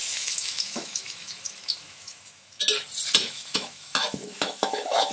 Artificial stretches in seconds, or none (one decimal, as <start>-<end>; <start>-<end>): 0.0-2.6; 3.2-5.1